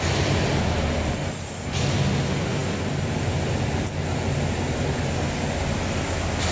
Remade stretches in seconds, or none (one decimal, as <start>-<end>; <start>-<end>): none

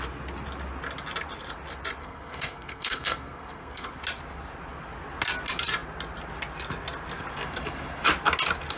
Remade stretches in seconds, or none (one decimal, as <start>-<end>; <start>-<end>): 2.0-3.9

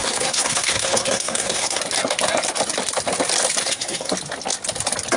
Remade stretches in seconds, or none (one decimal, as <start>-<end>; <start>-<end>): 0.0-1.8; 3.6-4.1

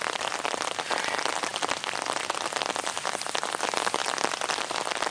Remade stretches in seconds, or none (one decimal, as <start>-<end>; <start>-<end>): none